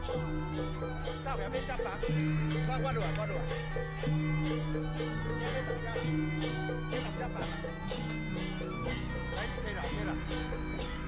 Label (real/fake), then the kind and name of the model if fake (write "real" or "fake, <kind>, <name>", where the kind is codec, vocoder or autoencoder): real